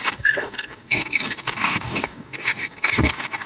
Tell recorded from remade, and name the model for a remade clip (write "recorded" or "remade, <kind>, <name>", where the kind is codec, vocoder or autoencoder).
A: remade, codec, DAC